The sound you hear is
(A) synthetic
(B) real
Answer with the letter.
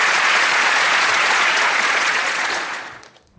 A